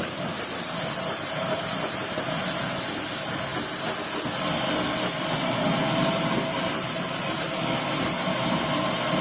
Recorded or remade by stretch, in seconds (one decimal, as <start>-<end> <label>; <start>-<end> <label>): 0.0-9.2 recorded